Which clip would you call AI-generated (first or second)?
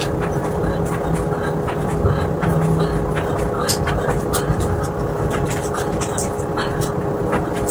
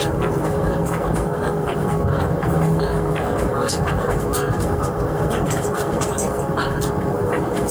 second